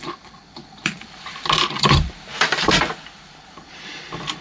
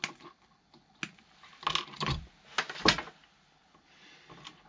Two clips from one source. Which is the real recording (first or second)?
second